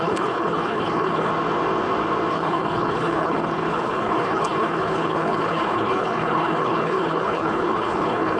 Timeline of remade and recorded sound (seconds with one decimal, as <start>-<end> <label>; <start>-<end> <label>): 0.0-1.3 remade; 1.3-2.3 recorded; 2.3-8.4 remade

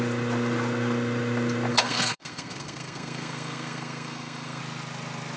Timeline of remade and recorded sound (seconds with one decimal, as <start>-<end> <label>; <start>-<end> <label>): 0.0-1.7 recorded; 1.7-4.6 remade; 4.6-5.4 recorded

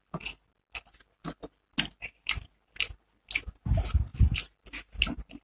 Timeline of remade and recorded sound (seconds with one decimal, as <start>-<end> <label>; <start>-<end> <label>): 0.0-5.4 recorded

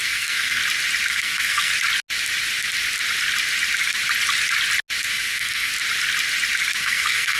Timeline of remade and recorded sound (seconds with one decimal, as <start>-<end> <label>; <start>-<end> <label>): 0.0-0.6 remade; 0.6-1.1 recorded; 1.1-1.7 remade; 1.7-5.0 recorded; 5.0-5.7 remade; 5.7-6.8 recorded; 6.8-7.4 remade

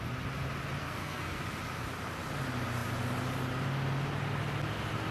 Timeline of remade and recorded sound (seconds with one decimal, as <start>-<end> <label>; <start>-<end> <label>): 0.0-0.8 recorded; 0.8-1.4 remade; 1.4-5.1 recorded

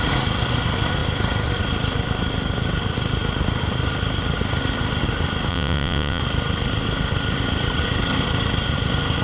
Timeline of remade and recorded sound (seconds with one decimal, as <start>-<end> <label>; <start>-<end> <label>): 0.0-5.5 recorded; 5.5-6.2 remade; 6.2-9.2 recorded

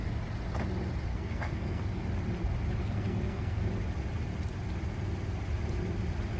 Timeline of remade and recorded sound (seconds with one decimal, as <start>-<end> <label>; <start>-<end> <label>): 0.0-1.1 recorded; 1.1-2.0 remade; 2.0-2.8 recorded; 2.8-3.6 remade; 3.6-6.4 recorded